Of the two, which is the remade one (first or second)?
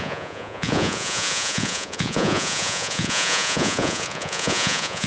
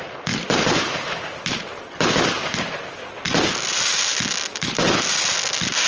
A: first